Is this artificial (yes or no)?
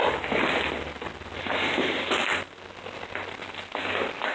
no